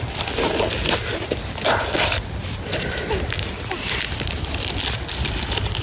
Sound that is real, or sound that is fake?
real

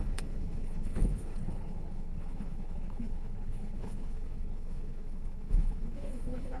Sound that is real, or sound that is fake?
fake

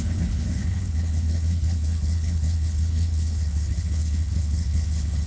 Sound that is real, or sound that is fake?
fake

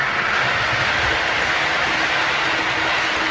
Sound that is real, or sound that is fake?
real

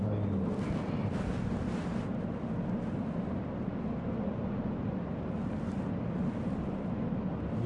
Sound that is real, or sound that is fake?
real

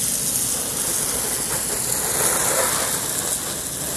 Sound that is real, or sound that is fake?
real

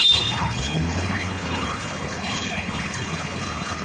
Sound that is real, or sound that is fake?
fake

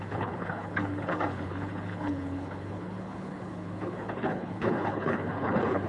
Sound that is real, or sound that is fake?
fake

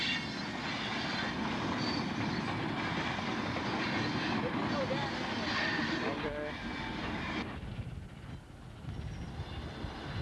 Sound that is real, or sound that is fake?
real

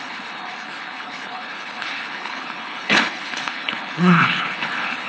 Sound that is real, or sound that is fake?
fake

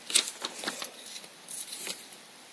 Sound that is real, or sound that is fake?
real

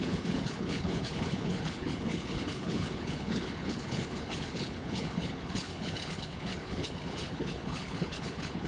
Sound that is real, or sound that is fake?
fake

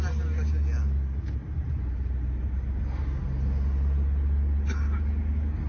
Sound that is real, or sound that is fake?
real